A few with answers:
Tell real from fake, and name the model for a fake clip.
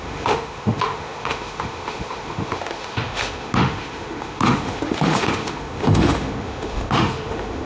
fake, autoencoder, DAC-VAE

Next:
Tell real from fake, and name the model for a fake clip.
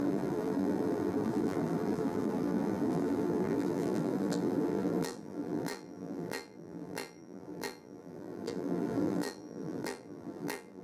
fake, vocoder, BigVGAN v2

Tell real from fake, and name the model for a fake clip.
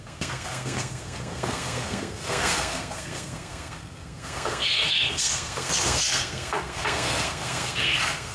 fake, codec, SNAC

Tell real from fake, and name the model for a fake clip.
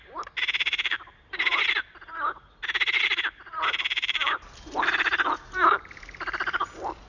fake, vocoder, BigVGAN v2